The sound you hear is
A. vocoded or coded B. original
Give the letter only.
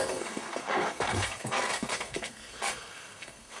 A